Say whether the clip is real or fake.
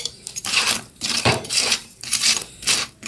fake